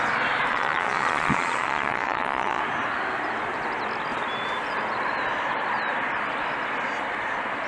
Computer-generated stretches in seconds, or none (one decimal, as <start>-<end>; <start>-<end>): 0.5-2.6

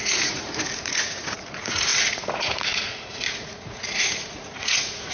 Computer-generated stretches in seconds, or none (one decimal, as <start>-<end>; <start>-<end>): 0.0-5.1

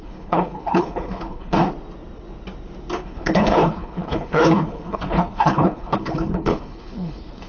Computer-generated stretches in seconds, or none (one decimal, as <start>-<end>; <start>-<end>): 0.0-1.7; 3.0-7.5

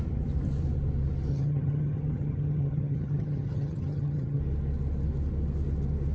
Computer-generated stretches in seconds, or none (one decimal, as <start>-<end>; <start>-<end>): 1.3-4.4

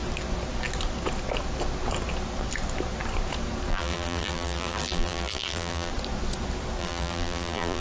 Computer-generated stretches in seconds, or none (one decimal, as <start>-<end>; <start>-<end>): 3.7-5.9; 6.8-7.8

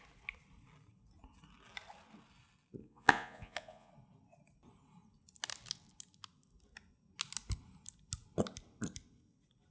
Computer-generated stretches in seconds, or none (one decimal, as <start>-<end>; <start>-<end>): 2.8-3.9

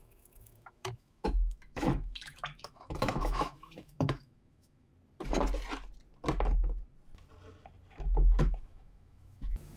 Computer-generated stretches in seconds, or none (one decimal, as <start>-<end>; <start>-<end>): 0.0-4.9; 8.4-9.8